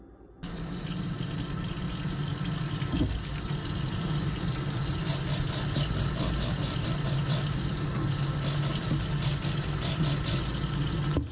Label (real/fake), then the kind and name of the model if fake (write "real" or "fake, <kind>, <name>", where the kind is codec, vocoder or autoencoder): real